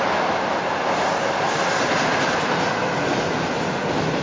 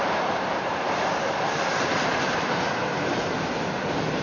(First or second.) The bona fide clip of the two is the first